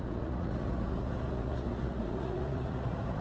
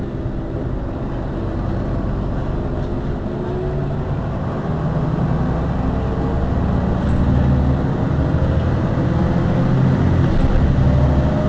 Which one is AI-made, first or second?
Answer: first